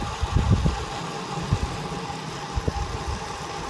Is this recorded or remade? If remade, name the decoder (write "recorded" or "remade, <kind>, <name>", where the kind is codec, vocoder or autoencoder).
recorded